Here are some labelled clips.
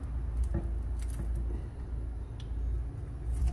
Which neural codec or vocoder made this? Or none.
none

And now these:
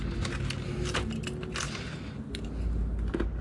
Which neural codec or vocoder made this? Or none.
none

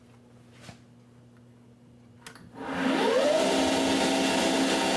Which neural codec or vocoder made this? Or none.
none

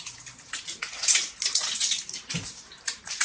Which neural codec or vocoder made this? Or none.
none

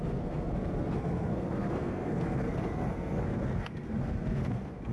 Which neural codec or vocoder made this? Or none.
codec, SNAC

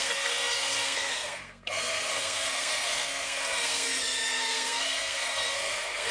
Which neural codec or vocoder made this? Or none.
codec, SNAC